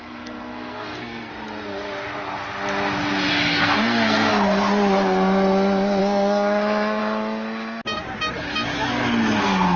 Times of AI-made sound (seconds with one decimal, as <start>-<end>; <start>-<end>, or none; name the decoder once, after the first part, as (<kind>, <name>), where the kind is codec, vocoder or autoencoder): 0.0-1.3 (codec, SNAC); 3.3-4.3; 6.0-7.0; 9.4-9.8